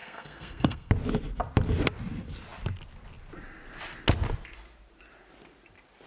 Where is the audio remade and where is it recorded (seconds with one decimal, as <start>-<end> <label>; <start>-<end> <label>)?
0.0-0.9 remade; 0.9-6.1 recorded